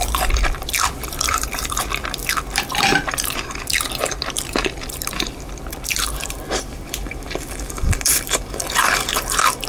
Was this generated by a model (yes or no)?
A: yes